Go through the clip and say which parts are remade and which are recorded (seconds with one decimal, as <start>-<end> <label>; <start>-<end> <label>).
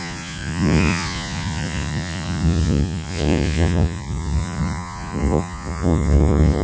0.0-6.6 remade